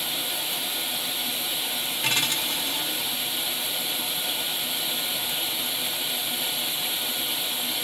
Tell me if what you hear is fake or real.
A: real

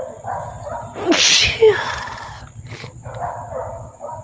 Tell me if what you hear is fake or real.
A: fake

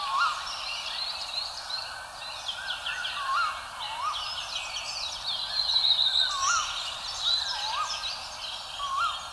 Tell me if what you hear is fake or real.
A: real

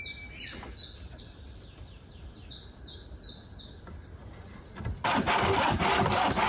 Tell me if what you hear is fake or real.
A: real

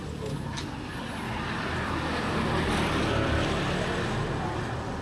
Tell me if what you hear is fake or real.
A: real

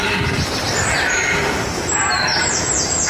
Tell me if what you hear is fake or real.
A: fake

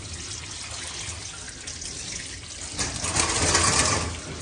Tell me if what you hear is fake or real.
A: real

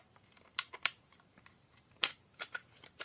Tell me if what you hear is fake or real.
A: fake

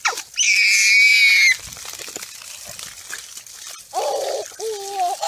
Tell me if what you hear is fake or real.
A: real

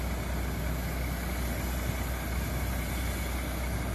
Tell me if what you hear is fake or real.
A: real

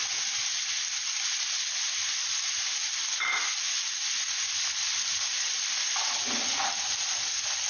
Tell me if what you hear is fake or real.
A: real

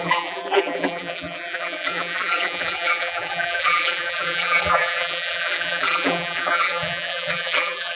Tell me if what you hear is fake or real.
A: fake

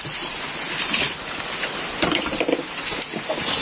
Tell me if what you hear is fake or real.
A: real